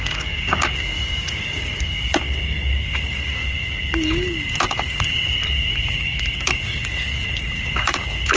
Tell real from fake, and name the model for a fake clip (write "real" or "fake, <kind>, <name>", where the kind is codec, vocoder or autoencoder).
fake, codec, DAC